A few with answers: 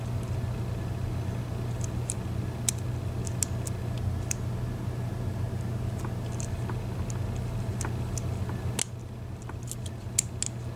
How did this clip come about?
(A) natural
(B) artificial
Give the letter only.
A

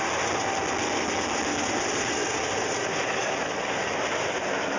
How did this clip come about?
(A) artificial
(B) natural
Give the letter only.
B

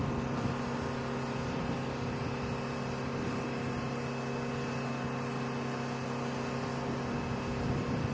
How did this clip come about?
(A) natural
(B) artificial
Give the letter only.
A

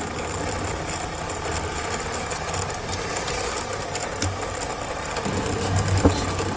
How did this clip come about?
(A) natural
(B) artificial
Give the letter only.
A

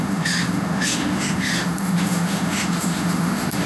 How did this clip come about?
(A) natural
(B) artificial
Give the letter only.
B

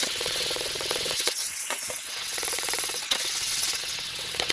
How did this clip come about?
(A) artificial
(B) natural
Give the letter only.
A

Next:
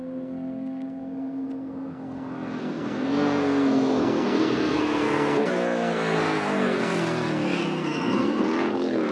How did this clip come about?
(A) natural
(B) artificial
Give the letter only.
B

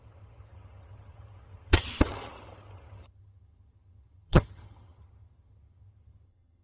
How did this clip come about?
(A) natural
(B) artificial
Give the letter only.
B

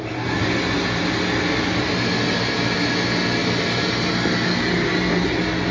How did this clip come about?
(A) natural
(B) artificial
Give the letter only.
A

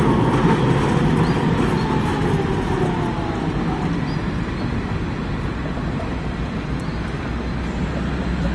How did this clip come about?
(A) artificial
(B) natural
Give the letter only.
B